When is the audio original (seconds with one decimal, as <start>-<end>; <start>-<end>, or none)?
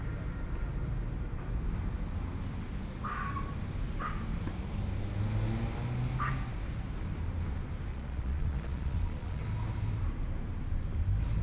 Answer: 0.0-7.9; 9.4-11.4